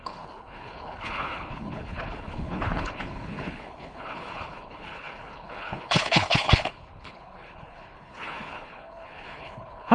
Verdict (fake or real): fake